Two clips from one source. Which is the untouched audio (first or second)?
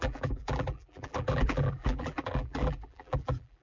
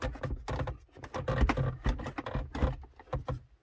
second